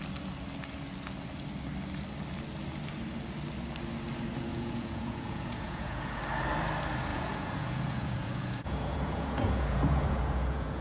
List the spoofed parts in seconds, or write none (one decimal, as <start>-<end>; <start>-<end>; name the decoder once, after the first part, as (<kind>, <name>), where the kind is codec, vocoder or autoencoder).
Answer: 4.5-6.2 (vocoder, Vocos); 7.1-10.8